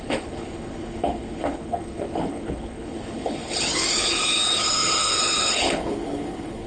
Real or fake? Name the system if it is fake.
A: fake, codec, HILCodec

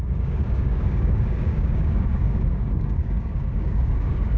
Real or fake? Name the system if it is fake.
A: fake, codec, DAC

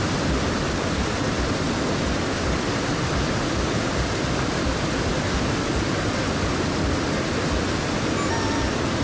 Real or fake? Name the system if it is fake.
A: real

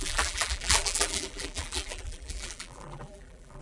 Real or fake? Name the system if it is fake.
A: fake, vocoder, BigVGAN v2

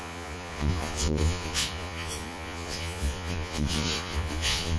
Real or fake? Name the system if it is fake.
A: fake, vocoder, Vocos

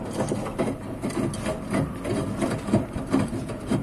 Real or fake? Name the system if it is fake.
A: real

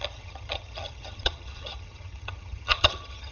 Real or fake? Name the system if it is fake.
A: fake, vocoder, HiFi-GAN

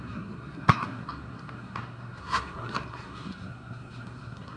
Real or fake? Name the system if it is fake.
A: fake, codec, SNAC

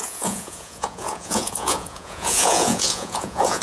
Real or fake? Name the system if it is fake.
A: fake, vocoder, Vocos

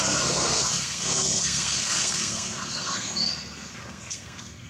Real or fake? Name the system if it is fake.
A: fake, codec, SNAC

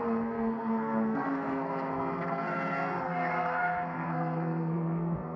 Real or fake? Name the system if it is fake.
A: fake, codec, SNAC